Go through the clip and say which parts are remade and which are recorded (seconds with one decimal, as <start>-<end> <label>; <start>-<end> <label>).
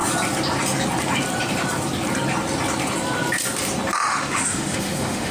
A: 0.0-4.1 recorded; 4.1-5.3 remade